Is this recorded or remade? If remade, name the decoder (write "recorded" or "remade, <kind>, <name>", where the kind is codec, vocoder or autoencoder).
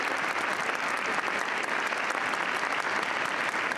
recorded